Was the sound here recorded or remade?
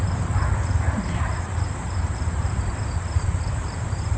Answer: remade